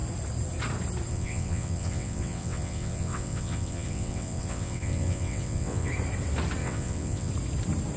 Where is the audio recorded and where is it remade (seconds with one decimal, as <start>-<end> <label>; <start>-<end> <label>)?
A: 0.0-1.1 recorded; 1.1-5.9 remade; 5.9-6.6 recorded; 6.6-7.3 remade; 7.3-8.0 recorded